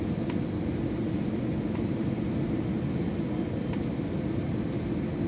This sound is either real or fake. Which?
real